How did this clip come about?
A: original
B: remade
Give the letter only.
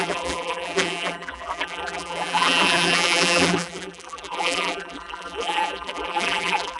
B